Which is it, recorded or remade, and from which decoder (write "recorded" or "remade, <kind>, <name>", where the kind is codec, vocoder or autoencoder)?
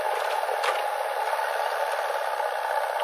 recorded